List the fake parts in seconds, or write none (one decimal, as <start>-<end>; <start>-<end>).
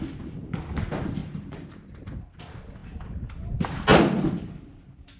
1.2-2.4